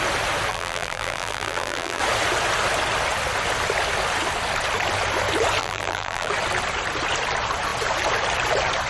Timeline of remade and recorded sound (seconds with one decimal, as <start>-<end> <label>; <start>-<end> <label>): 0.0-0.5 recorded; 0.5-2.0 remade; 2.0-5.6 recorded; 5.6-6.3 remade; 6.3-8.9 recorded